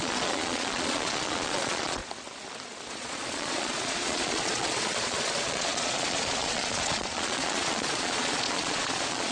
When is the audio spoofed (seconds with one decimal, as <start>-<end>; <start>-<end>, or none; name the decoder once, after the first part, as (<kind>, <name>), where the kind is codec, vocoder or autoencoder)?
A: 0.0-2.0 (vocoder, Vocos); 2.9-9.3